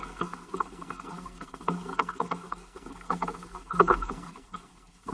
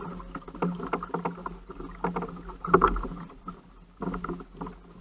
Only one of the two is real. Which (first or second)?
second